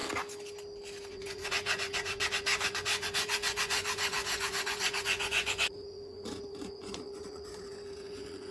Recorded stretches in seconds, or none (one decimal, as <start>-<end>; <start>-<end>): 0.0-1.1